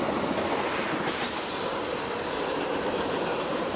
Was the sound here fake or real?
real